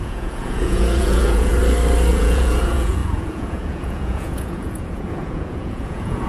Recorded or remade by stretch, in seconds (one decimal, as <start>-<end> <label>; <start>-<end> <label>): 0.0-1.5 remade; 1.5-2.1 recorded; 2.1-6.3 remade